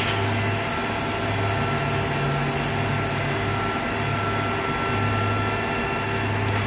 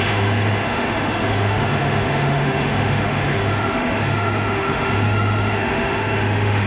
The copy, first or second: second